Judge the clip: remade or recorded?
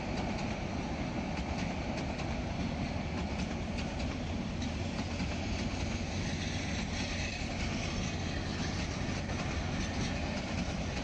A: recorded